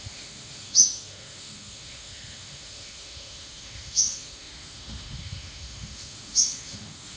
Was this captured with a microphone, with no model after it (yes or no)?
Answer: no